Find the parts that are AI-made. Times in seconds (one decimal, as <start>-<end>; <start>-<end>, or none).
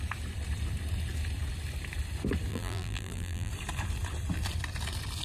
2.5-3.5